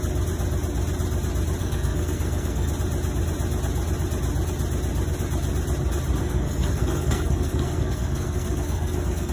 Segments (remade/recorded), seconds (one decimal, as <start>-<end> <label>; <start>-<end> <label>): 0.0-1.6 recorded; 1.6-2.7 remade; 2.7-6.2 recorded; 6.2-9.3 remade